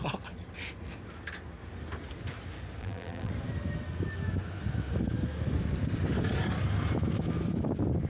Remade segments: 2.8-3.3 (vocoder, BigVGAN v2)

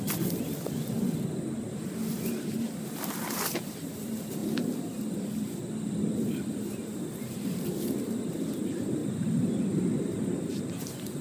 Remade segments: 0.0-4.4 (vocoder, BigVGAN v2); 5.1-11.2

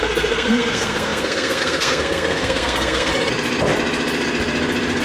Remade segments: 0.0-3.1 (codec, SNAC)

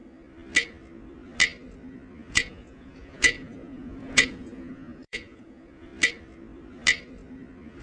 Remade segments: 2.3-5.9 (vocoder, Vocos)

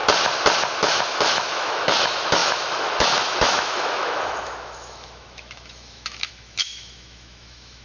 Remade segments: 0.8-7.8 (autoencoder, DAC-VAE)

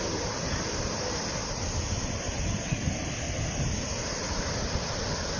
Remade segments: 0.4-1.3 (vocoder, BigVGAN v2)

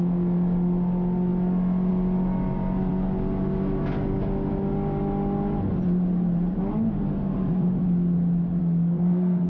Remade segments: 8.6-9.5 (codec, SNAC)

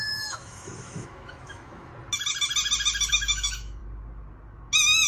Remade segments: 0.0-1.9 (autoencoder, DAC-VAE); 3.1-3.8